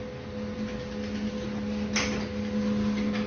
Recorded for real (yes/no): yes